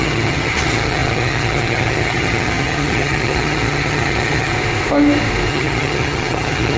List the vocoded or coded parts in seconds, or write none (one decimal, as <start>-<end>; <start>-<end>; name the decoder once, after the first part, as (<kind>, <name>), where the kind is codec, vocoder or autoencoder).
0.0-4.5 (vocoder, HiFi-GAN); 5.5-6.8